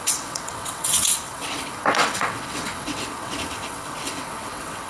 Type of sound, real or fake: fake